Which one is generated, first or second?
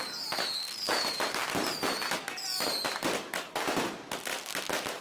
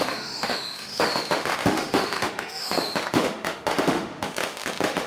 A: second